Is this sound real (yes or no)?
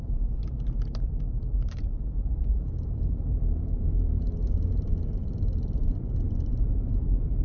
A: no